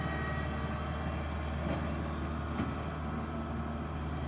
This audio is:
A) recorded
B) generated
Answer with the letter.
A